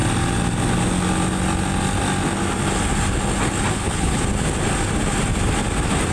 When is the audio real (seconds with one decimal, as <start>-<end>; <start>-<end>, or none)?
0.0-3.7; 4.3-6.1